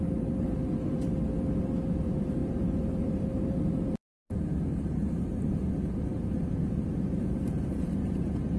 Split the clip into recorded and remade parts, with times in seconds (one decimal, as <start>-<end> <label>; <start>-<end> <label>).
0.0-1.0 remade; 1.0-1.6 recorded; 1.6-8.6 remade